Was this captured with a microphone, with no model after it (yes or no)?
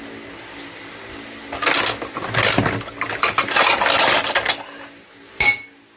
yes